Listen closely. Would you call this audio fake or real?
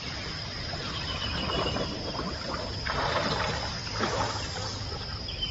fake